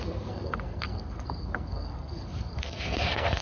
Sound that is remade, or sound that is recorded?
remade